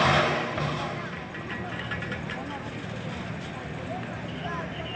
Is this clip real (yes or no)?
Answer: yes